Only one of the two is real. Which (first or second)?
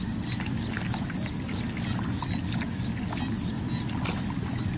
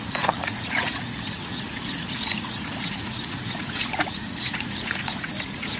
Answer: first